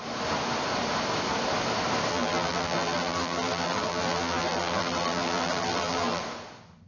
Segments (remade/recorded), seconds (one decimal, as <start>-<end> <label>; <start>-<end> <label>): 0.0-2.1 recorded; 2.1-6.2 remade; 6.2-6.9 recorded